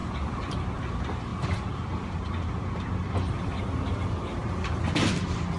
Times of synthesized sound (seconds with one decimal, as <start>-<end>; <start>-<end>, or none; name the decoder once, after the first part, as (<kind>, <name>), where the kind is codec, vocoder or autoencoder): 0.0-0.9 (vocoder, BigVGAN v2); 1.3-3.6